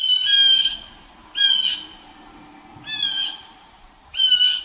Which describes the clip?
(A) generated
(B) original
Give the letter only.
B